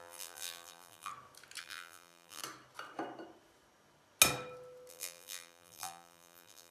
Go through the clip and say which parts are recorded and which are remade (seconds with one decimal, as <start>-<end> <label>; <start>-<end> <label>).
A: 0.0-1.1 remade; 1.1-1.6 recorded; 1.6-2.4 remade; 2.4-4.9 recorded; 4.9-6.7 remade